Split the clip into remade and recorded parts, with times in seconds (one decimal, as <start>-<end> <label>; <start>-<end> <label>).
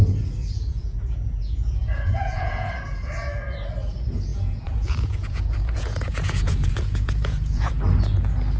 0.0-0.7 recorded; 0.7-2.7 remade; 2.7-4.3 recorded; 4.3-7.7 remade; 7.7-8.6 recorded